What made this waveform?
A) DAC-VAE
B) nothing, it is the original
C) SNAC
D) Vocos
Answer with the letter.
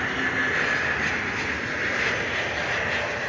B